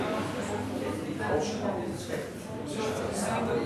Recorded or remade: recorded